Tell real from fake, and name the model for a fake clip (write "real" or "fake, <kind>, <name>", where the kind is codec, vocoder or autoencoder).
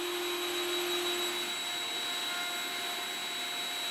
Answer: real